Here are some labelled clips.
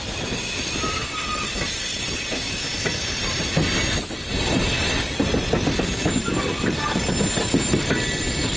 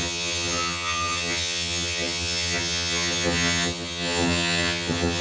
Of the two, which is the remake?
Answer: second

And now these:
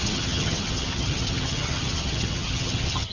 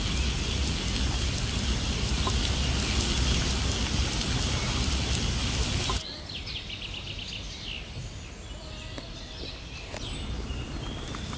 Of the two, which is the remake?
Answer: first